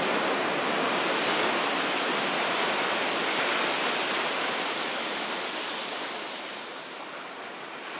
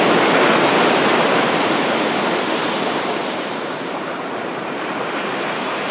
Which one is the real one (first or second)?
first